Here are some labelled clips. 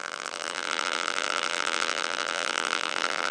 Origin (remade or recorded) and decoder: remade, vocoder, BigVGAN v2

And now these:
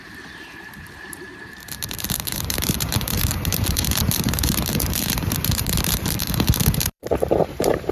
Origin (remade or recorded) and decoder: remade, vocoder, BigVGAN v2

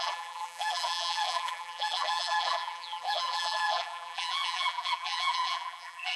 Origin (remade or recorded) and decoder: remade, vocoder, BigVGAN v2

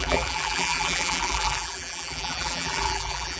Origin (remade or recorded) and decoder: remade, vocoder, BigVGAN v2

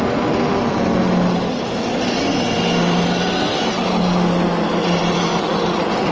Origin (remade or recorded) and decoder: recorded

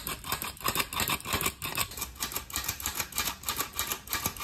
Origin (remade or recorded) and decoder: recorded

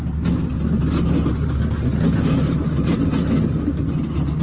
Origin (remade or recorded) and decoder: recorded